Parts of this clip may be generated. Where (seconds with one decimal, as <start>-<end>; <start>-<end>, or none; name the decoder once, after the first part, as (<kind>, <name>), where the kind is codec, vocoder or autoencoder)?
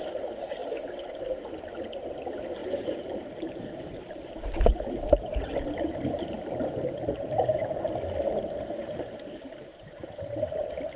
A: 2.6-7.6 (vocoder, BigVGAN v2); 9.7-10.5